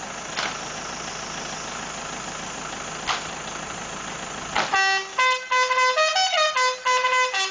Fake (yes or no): no